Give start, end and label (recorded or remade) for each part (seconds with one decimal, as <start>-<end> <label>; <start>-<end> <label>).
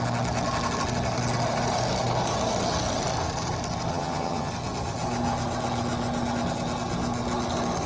0.0-3.9 recorded; 3.9-4.5 remade; 4.5-7.9 recorded